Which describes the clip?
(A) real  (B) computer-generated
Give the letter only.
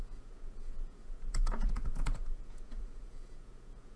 B